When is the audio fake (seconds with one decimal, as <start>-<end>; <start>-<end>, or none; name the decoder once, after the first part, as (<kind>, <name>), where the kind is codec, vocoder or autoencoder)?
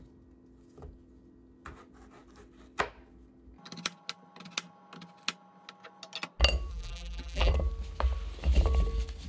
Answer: 6.7-7.5 (vocoder, BigVGAN v2)